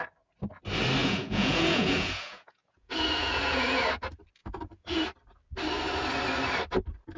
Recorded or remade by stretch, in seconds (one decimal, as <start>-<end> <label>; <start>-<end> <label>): 0.0-1.0 recorded; 1.0-3.8 remade; 3.8-4.4 recorded; 4.4-5.0 remade; 5.0-7.2 recorded